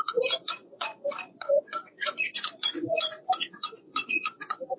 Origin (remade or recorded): remade